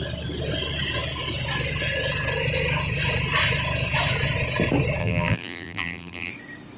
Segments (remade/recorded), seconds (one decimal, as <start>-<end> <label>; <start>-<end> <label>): 0.0-5.0 recorded; 5.0-6.3 remade; 6.3-6.8 recorded

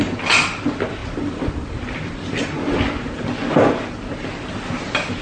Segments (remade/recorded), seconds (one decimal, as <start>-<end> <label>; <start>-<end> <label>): 0.0-5.2 recorded

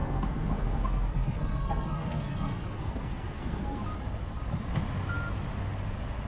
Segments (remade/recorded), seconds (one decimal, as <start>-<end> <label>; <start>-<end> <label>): 0.0-3.8 remade; 3.8-6.3 recorded

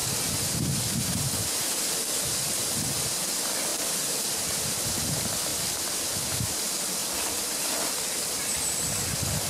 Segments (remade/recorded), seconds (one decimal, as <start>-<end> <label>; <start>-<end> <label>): 0.0-3.7 recorded; 3.7-4.2 remade; 4.2-5.5 recorded; 5.5-6.1 remade; 6.1-7.0 recorded; 7.0-8.0 remade; 8.0-9.5 recorded

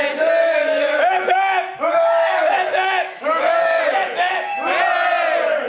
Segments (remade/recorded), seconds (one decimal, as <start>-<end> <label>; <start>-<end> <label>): 0.0-0.4 recorded; 0.4-3.8 remade; 3.8-5.7 recorded

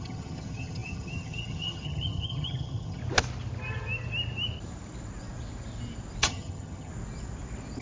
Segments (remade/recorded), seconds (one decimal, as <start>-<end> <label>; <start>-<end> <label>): 0.0-3.0 remade; 3.0-6.2 recorded; 6.2-6.9 remade; 6.9-7.8 recorded

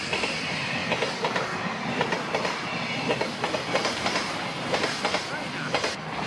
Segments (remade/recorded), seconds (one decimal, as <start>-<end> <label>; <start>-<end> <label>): 0.0-6.3 recorded

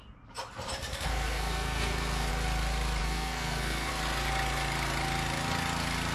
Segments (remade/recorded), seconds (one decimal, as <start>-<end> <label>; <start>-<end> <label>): 0.0-0.9 recorded; 0.9-2.3 remade; 2.3-3.0 recorded; 3.0-3.9 remade; 3.9-6.1 recorded